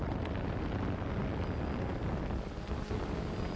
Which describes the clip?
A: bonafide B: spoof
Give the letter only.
A